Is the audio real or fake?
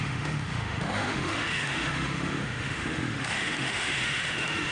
fake